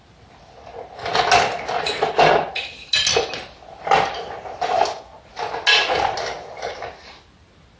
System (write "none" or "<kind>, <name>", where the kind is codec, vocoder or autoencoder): none